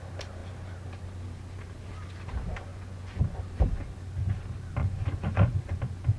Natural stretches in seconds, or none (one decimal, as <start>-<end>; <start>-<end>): 0.0-2.7; 3.4-4.8; 5.7-6.2